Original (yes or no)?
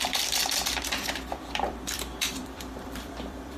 no